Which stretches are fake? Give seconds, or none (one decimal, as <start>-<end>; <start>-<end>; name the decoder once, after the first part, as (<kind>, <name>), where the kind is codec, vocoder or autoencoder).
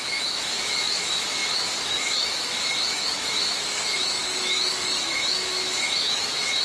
0.0-6.6 (autoencoder, DAC-VAE)